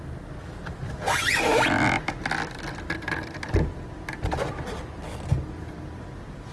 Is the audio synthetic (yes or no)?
no